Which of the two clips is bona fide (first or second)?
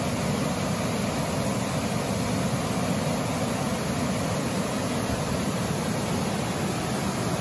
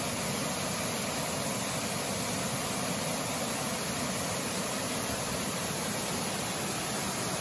first